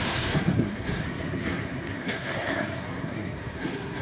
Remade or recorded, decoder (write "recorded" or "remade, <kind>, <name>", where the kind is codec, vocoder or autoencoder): remade, codec, SNAC